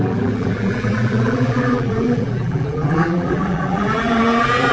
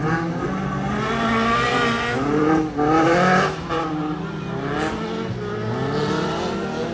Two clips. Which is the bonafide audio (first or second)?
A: second